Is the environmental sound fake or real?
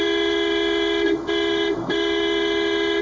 fake